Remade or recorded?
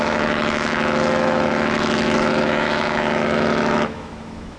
remade